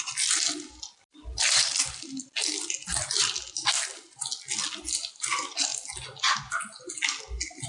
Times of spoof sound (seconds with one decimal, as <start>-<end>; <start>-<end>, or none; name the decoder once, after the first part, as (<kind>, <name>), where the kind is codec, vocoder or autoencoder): 1.1-2.2 (vocoder, BigVGAN v2)